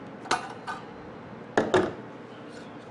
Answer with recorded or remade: recorded